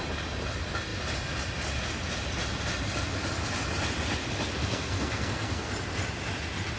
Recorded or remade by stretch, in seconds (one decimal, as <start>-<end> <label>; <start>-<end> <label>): 0.0-4.6 recorded; 4.6-5.7 remade; 5.7-6.8 recorded